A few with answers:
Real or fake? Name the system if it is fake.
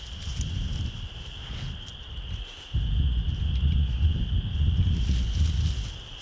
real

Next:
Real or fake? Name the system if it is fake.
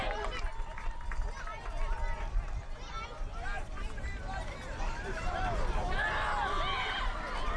real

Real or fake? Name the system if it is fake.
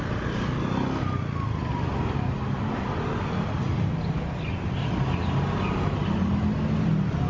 real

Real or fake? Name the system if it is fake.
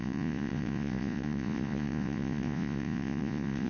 fake, vocoder, Vocos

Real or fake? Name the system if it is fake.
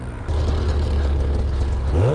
real